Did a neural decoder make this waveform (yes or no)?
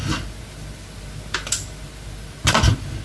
no